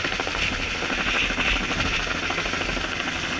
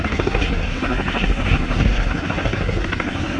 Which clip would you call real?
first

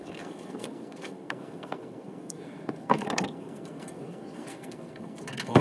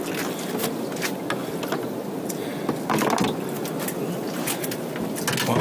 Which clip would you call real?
second